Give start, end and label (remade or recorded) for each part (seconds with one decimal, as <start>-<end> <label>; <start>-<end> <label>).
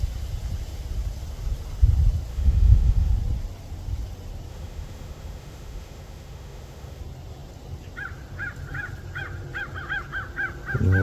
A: 0.0-2.3 recorded; 2.3-3.1 remade; 3.1-4.5 recorded; 4.5-7.0 remade; 7.0-11.0 recorded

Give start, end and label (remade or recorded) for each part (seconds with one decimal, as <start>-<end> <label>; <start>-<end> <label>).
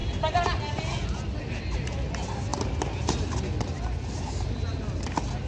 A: 0.0-5.5 recorded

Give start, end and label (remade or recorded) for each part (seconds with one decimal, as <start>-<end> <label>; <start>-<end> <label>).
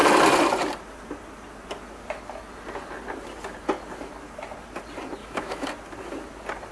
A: 0.0-5.2 recorded; 5.2-5.7 remade; 5.7-6.7 recorded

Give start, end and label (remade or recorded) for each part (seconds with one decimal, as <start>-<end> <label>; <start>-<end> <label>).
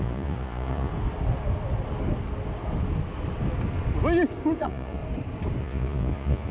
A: 0.0-0.9 remade; 0.9-4.6 recorded; 4.6-5.0 remade; 5.0-5.6 recorded; 5.6-6.5 remade